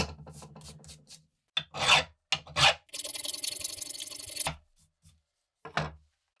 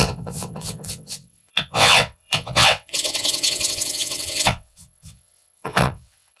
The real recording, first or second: first